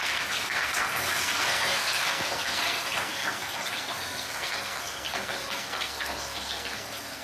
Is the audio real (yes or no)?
no